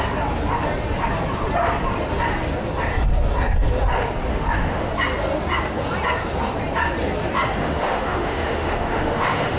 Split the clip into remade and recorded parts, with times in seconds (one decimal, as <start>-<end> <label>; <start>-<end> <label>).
0.0-4.3 recorded; 4.3-4.9 remade; 4.9-7.6 recorded; 7.6-9.6 remade